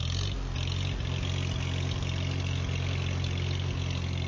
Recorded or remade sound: recorded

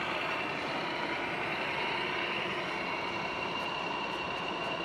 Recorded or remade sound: remade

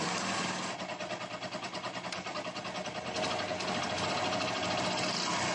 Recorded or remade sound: recorded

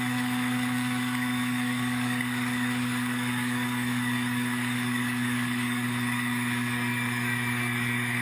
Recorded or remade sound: remade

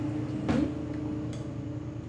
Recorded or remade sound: recorded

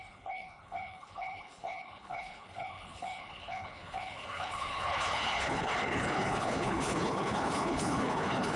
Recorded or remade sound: remade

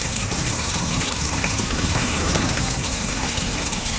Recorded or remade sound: remade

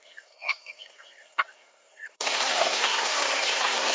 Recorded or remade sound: remade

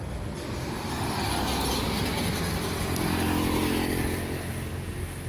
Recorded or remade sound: recorded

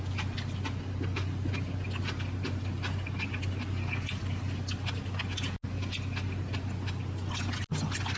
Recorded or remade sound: recorded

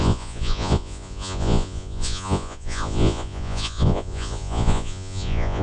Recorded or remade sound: remade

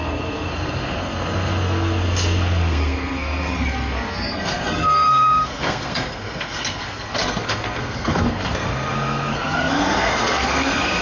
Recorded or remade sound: remade